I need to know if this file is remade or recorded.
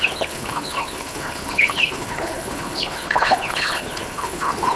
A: remade